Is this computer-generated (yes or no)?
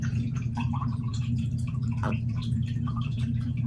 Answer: yes